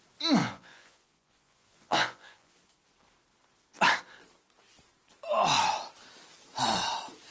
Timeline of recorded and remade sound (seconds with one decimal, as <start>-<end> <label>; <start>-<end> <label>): 0.0-0.4 recorded; 0.4-2.5 remade; 2.5-7.3 recorded